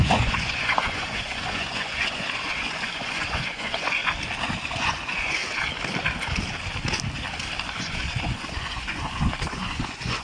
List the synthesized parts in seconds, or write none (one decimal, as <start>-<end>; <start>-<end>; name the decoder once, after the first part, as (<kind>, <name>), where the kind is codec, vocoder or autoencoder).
0.0-4.0 (vocoder, Vocos); 4.6-5.4; 7.7-10.2

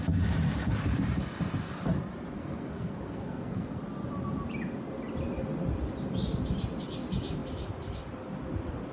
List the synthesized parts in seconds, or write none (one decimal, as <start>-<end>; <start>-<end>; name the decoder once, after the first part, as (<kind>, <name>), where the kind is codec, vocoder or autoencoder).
2.3-3.8 (codec, SNAC)